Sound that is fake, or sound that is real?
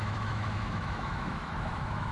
fake